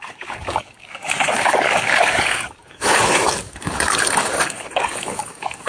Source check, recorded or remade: remade